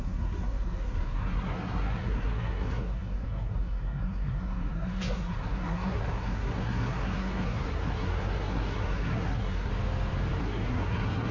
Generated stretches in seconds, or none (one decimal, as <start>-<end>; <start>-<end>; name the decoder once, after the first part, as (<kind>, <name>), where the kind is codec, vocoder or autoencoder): 0.0-9.7 (codec, SNAC); 10.4-11.3